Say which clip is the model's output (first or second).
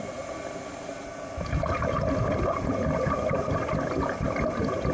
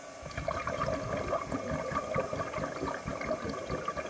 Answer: first